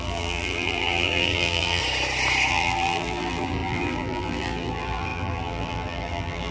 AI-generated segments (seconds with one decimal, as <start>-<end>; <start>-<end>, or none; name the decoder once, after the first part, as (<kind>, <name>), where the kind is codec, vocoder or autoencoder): 0.0-1.8 (vocoder, BigVGAN v2); 2.5-6.5